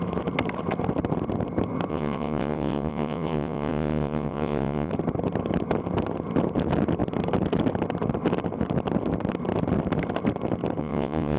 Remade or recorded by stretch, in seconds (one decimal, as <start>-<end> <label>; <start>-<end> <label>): 0.0-1.9 recorded; 1.9-4.9 remade; 4.9-10.8 recorded; 10.8-11.4 remade